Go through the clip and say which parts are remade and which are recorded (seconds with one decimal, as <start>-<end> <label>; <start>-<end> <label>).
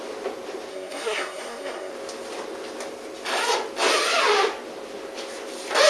0.0-0.7 recorded; 0.7-1.9 remade; 1.9-5.9 recorded